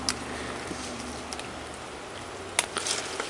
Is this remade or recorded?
recorded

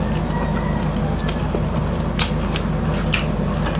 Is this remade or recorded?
recorded